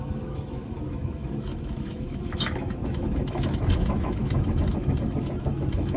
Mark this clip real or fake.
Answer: fake